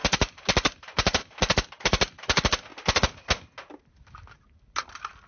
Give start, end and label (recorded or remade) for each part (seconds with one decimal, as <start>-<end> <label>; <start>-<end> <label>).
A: 0.0-5.3 recorded